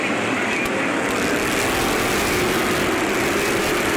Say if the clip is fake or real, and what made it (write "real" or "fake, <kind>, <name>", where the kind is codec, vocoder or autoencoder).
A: real